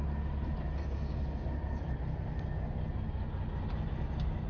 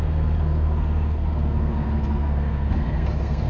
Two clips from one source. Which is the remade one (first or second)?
second